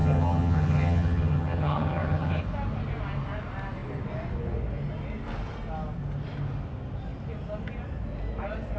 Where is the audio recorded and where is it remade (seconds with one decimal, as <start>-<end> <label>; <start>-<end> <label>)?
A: 0.0-2.4 remade; 2.4-8.8 recorded